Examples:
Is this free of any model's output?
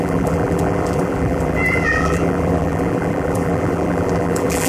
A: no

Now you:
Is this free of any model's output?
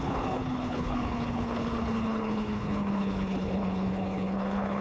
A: no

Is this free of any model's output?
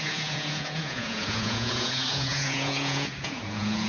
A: no